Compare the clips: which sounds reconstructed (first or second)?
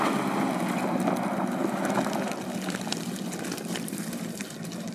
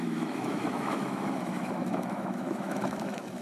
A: second